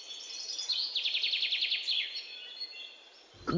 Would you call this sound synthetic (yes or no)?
no